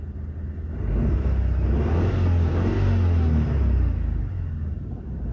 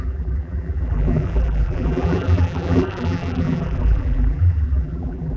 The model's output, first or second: second